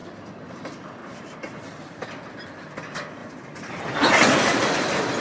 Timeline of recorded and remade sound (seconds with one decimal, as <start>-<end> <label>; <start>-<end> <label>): 0.0-0.5 remade; 0.5-1.0 recorded; 1.0-2.0 remade; 2.0-3.2 recorded; 3.2-3.8 remade; 3.8-5.2 recorded